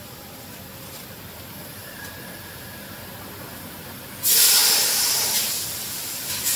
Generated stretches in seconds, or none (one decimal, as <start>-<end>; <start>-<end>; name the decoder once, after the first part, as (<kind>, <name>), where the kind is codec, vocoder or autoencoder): 4.6-6.1 (vocoder, BigVGAN v2)